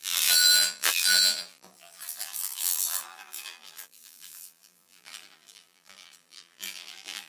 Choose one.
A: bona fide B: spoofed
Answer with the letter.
B